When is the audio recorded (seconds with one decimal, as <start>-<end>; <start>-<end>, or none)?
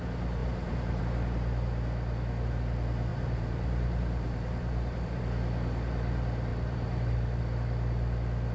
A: 0.0-0.4; 1.0-3.1; 5.2-6.5; 7.4-8.5